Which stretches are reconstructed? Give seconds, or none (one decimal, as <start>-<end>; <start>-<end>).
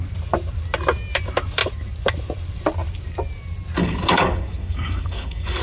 3.8-5.6